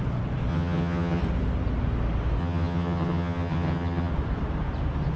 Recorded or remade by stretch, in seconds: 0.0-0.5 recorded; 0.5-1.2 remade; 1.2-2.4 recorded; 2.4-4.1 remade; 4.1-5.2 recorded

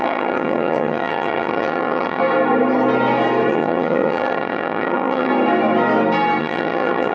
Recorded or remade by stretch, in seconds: 0.0-2.2 remade; 2.2-3.5 recorded; 3.5-5.3 remade; 5.3-6.4 recorded; 6.4-7.1 remade

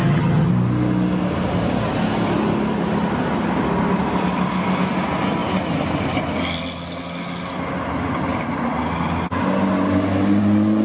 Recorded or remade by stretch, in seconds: 0.0-0.5 remade; 0.5-10.8 recorded

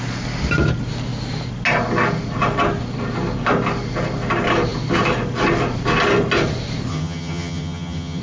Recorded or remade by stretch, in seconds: 0.0-6.9 recorded; 6.9-8.2 remade